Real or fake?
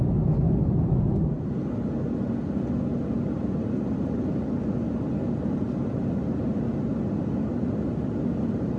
real